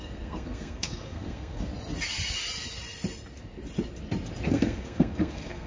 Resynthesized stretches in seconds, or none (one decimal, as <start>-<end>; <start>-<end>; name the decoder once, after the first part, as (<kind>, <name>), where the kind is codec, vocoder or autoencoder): 0.0-1.7 (codec, SNAC); 4.5-5.7